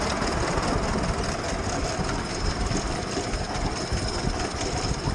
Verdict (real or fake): real